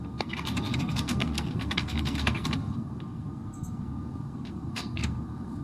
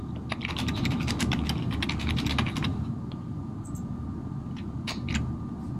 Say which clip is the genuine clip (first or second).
second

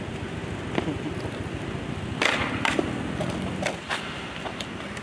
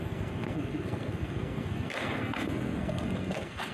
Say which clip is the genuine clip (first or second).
first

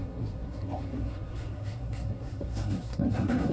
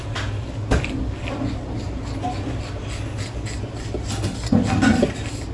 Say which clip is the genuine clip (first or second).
second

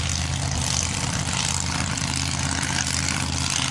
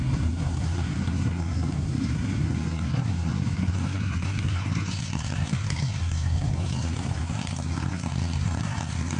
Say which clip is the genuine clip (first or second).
first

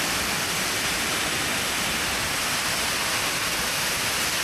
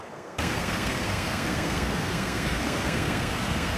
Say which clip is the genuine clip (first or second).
first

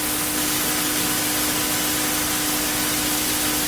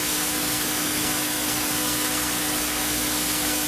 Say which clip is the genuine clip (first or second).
first